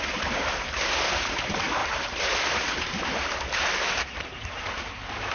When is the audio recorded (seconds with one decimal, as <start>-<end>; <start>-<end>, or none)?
0.0-5.3